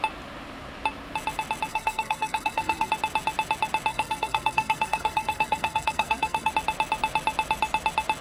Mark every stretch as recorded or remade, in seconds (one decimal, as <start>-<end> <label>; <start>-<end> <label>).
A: 0.0-1.7 recorded; 1.7-2.9 remade; 2.9-3.9 recorded; 3.9-6.5 remade; 6.5-8.2 recorded